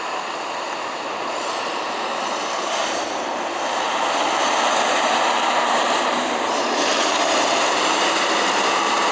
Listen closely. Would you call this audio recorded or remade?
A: remade